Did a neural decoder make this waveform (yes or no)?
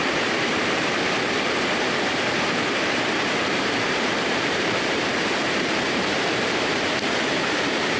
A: yes